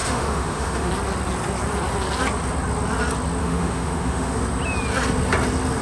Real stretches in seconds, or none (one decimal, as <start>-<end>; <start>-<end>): 0.9-3.4; 4.3-5.8